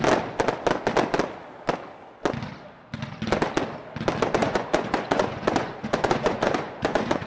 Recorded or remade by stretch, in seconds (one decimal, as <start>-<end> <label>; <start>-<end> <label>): 0.0-4.4 recorded; 4.4-7.3 remade